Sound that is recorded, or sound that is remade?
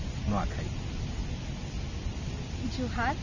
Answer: recorded